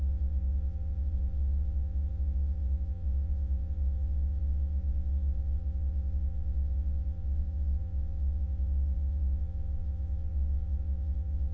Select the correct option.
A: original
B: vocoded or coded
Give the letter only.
B